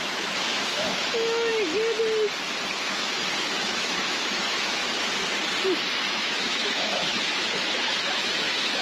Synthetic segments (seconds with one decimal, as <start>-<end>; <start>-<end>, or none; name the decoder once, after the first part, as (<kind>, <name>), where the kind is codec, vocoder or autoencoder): 0.0-1.5 (autoencoder, DAC-VAE); 2.8-4.8; 5.9-8.8